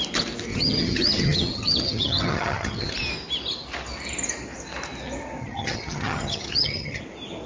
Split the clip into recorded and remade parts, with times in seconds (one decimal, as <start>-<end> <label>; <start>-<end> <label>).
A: 0.0-0.5 recorded; 0.5-2.9 remade; 2.9-5.4 recorded; 5.4-7.0 remade; 7.0-7.5 recorded